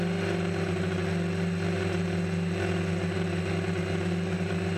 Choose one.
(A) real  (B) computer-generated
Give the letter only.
A